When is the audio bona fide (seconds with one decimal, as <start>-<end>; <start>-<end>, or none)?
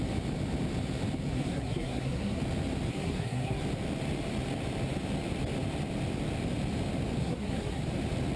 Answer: 0.0-1.3; 2.4-2.9; 3.6-7.2; 7.8-8.4